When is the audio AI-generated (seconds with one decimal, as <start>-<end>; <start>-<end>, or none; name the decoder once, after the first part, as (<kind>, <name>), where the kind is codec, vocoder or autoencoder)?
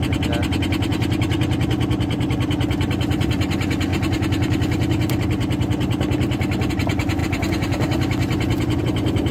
none